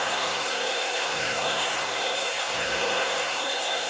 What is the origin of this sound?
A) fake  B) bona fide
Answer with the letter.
A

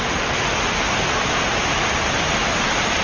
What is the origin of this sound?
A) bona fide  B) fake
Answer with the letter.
A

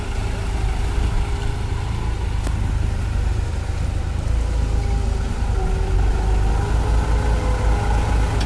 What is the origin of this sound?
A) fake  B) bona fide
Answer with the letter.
B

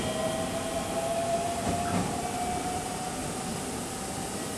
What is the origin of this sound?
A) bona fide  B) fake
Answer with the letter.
A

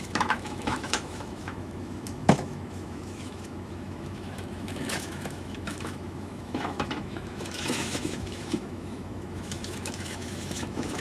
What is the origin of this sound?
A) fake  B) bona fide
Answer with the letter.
A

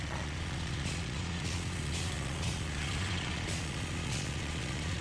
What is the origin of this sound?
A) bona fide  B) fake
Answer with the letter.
B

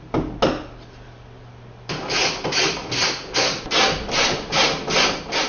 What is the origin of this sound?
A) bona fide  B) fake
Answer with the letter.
A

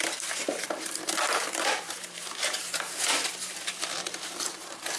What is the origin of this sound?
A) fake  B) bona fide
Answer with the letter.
A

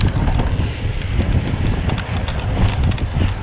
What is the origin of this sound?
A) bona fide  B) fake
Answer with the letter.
A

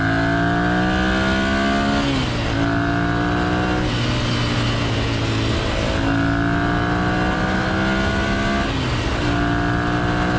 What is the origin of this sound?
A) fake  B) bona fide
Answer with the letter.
B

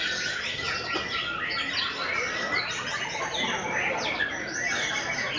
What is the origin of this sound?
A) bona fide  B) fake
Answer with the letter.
A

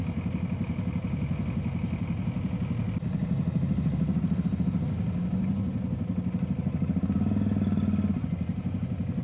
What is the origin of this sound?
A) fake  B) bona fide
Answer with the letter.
B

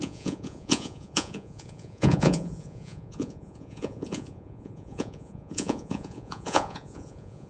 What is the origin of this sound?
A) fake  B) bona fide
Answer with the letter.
A